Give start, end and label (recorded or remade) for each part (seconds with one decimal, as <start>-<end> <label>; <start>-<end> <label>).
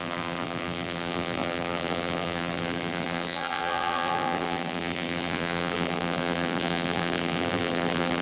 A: 0.0-8.2 remade